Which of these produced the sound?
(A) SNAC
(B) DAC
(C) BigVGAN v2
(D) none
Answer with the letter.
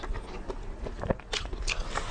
D